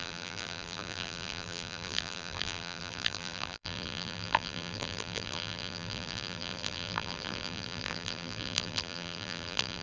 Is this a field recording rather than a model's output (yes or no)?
no